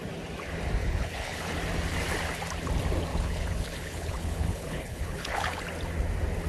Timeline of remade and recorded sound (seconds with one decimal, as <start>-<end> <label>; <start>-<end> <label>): 0.0-0.8 recorded; 0.8-1.5 remade; 1.5-3.1 recorded; 3.1-5.6 remade; 5.6-6.5 recorded